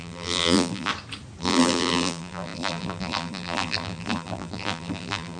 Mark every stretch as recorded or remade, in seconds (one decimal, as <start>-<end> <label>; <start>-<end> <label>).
0.0-0.9 remade; 0.9-1.4 recorded; 1.4-5.4 remade